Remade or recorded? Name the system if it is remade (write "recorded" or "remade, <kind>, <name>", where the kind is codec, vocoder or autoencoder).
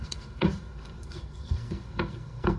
remade, codec, SNAC